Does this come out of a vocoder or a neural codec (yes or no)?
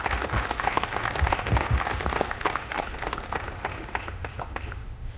yes